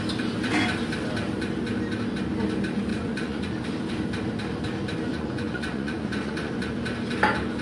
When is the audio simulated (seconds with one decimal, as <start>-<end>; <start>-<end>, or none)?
2.9-3.5; 5.1-6.7